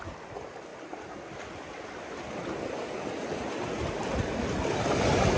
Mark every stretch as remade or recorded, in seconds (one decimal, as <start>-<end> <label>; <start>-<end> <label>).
0.0-5.4 recorded